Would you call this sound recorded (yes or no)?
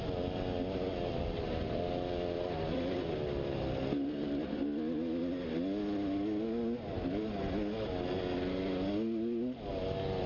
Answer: yes